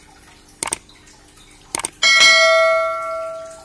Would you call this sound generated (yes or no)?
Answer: no